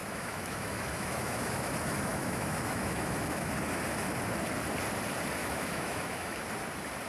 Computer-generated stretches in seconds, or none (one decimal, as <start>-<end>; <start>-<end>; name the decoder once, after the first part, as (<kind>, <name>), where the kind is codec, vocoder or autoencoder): 0.0-1.7 (autoencoder, DAC-VAE); 2.1-3.5; 5.4-6.4